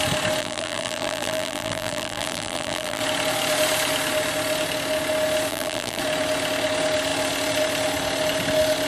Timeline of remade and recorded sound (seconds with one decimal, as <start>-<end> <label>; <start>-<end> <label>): 0.0-0.4 recorded; 0.4-3.0 remade; 3.0-5.5 recorded; 5.5-6.0 remade; 6.0-8.9 recorded